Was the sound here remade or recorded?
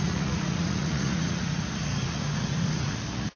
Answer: remade